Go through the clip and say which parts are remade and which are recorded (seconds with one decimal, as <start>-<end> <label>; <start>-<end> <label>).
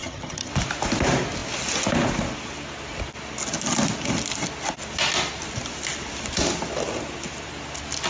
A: 0.0-0.5 remade; 0.5-8.1 recorded